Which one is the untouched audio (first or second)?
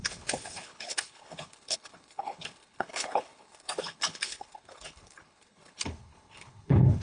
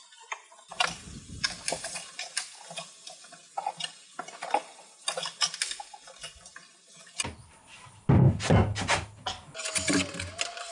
second